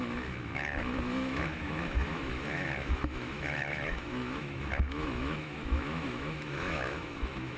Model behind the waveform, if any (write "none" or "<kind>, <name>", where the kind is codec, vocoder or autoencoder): autoencoder, DAC-VAE